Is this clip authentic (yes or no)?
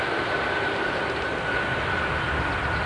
yes